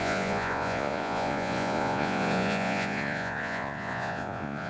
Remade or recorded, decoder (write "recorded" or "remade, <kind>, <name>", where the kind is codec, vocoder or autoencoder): remade, vocoder, Vocos